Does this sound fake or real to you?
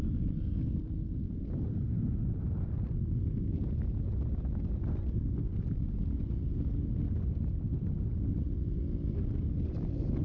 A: real